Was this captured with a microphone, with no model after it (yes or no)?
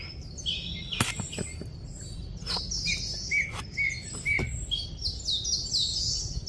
yes